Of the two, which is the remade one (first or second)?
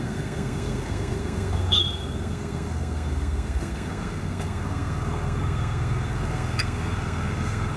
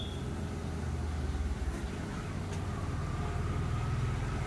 first